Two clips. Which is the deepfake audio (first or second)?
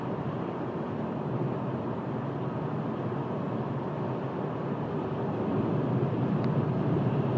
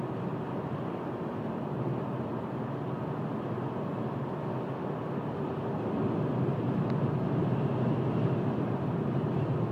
first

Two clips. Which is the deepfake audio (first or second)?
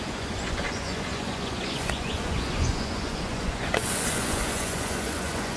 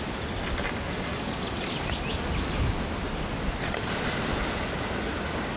first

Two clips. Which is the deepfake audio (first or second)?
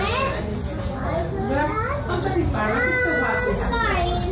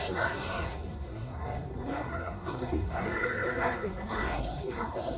second